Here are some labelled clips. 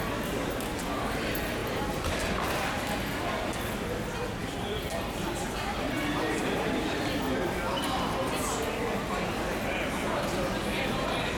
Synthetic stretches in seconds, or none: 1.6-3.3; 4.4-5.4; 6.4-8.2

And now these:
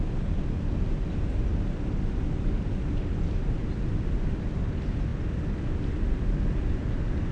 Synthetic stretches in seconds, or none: none

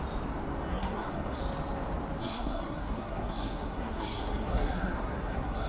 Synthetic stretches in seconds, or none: 0.7-1.4; 2.2-5.7

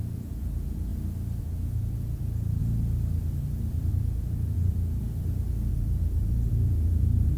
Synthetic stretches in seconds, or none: 0.0-0.9; 1.4-2.6; 3.9-5.0; 5.7-7.4

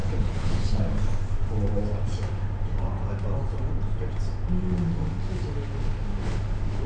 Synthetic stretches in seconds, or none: 0.0-0.8

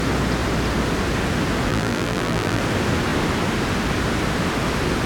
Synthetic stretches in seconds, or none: 1.7-2.6

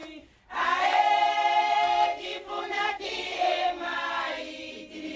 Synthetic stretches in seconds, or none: 1.6-4.0